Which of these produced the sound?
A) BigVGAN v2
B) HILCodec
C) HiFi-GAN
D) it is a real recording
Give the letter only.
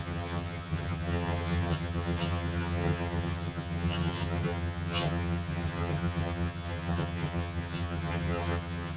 C